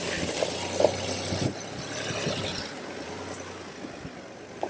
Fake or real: real